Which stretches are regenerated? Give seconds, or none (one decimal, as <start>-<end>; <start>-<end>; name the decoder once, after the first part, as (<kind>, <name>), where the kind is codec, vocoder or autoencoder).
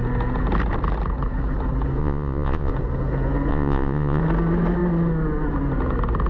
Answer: 2.0-2.7 (vocoder, Vocos); 3.5-4.2